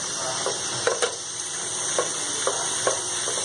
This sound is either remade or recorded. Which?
recorded